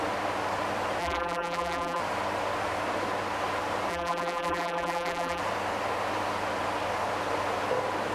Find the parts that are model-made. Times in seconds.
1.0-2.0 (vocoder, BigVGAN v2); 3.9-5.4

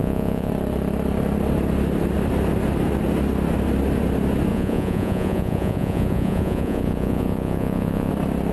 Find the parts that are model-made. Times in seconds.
0.0-0.5 (vocoder, Vocos); 4.5-8.1

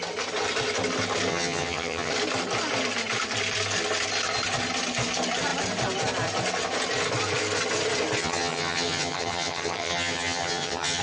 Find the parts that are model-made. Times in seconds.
1.3-2.1 (vocoder, HiFi-GAN); 8.2-11.0

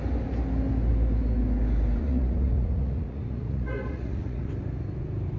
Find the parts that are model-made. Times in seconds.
2.0-4.5 (vocoder, Vocos)

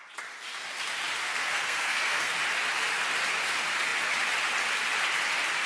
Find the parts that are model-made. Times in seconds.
1.2-2.4 (codec, SNAC)